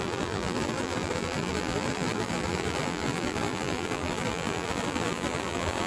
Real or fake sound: fake